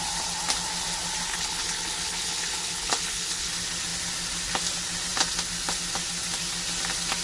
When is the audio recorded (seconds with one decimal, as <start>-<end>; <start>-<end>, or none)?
0.0-1.3; 3.5-7.2